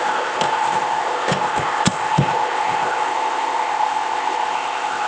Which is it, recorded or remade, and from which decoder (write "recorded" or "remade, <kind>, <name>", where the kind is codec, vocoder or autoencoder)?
remade, codec, ZipCodec